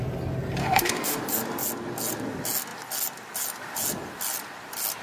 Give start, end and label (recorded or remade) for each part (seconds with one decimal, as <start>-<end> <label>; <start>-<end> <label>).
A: 0.0-0.6 recorded; 0.6-1.2 remade; 1.2-5.0 recorded